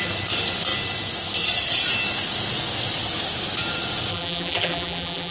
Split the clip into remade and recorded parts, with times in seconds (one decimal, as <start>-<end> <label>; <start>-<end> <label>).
0.0-4.1 recorded; 4.1-5.3 remade